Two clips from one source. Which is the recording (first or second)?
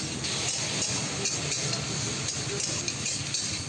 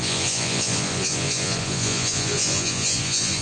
first